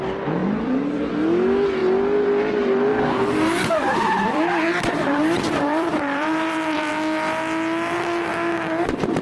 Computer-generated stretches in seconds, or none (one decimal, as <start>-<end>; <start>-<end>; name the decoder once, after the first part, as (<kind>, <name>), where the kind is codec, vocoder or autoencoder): 0.4-1.1 (vocoder, BigVGAN v2); 2.9-6.9